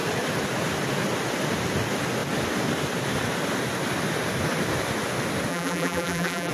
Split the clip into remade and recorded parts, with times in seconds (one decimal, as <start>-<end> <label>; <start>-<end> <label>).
0.0-5.5 recorded; 5.5-6.5 remade